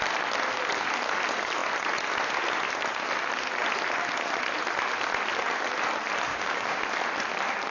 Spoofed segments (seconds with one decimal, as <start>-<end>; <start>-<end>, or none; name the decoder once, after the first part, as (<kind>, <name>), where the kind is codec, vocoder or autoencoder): 6.3-6.8 (codec, DAC)